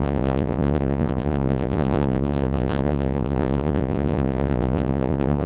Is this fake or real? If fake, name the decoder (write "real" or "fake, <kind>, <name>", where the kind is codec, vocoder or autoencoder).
fake, vocoder, Vocos